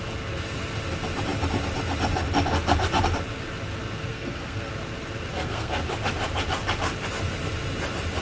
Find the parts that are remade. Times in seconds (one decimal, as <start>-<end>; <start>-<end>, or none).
4.1-4.7; 5.3-5.8